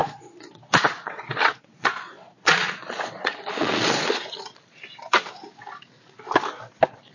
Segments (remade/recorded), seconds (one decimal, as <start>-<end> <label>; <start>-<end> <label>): 0.0-4.3 remade; 4.3-7.1 recorded